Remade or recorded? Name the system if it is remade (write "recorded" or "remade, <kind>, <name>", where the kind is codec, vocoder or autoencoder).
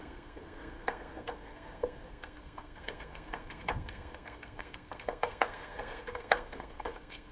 remade, codec, SNAC